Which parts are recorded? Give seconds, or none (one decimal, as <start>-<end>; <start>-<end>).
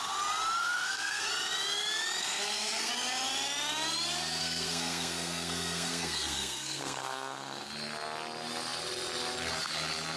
0.0-0.6; 1.3-2.2; 2.9-4.4; 7.7-10.2